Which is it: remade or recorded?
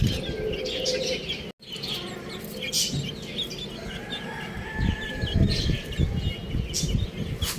recorded